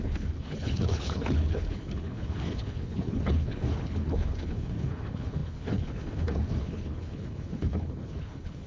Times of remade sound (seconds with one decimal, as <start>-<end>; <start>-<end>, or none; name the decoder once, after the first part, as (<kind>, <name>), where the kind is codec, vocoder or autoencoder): 0.0-8.7 (codec, HILCodec)